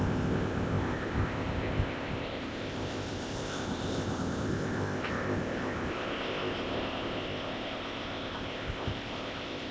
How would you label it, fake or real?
fake